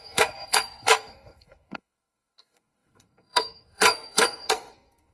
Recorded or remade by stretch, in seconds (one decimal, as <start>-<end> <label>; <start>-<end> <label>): 0.0-5.1 remade